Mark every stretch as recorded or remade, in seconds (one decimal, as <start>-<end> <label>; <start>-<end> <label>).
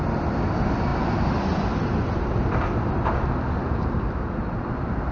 0.0-5.1 recorded